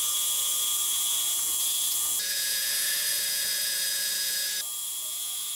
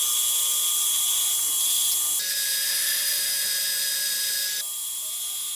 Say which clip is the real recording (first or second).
second